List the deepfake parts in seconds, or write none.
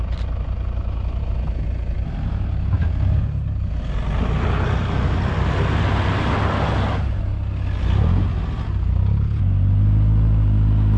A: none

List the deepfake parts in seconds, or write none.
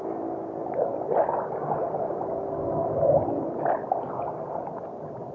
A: none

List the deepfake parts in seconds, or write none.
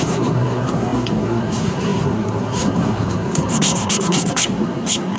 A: 0.0-5.2 (codec, SNAC)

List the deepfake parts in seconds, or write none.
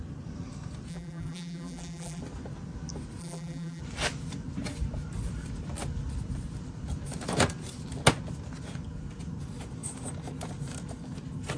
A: 0.9-2.2 (vocoder, BigVGAN v2); 3.2-3.8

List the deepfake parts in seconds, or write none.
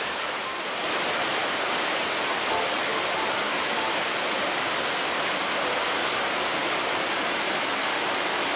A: none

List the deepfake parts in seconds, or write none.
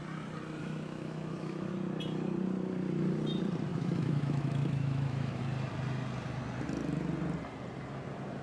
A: 0.6-1.7 (autoencoder, DAC-VAE); 3.7-5.4